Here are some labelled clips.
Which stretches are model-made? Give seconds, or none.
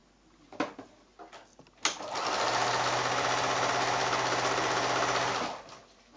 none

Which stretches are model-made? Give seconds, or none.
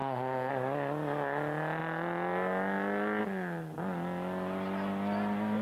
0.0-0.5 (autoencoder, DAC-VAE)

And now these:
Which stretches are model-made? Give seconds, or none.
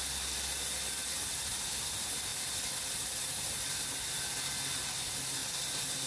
none